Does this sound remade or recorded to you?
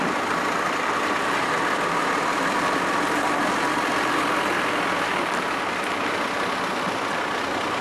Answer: remade